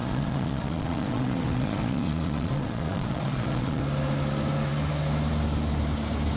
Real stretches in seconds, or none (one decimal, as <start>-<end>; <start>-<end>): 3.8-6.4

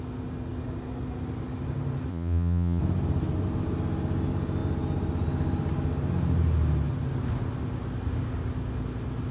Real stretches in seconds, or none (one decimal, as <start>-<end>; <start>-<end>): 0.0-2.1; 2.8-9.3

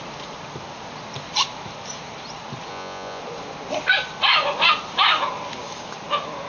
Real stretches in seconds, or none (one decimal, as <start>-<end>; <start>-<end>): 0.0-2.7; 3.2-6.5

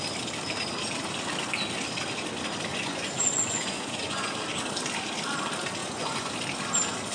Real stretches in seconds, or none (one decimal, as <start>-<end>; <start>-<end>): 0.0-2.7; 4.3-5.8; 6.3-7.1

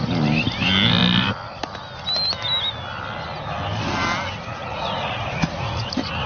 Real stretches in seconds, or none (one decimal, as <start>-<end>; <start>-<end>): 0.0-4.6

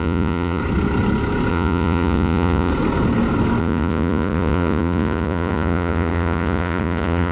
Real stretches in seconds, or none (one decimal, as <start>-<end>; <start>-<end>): 0.6-1.5; 2.7-3.6

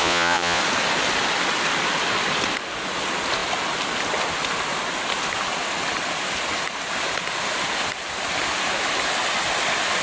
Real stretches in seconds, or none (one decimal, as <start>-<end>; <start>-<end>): 0.6-10.0